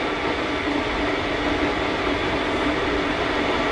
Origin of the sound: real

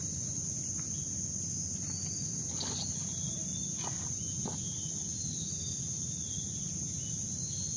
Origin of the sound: real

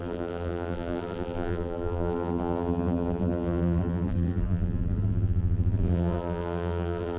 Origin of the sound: fake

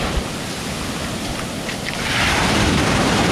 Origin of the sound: real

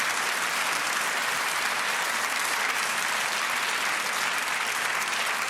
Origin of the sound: real